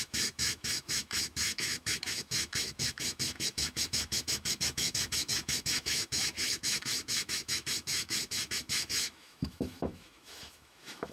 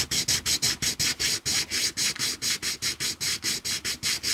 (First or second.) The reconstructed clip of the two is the first